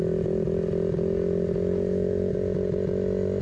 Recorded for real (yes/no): yes